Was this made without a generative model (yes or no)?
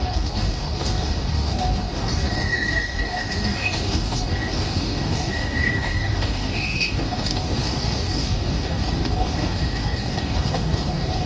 no